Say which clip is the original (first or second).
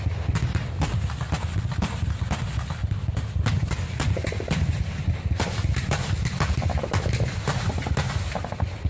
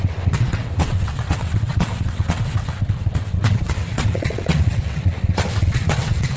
first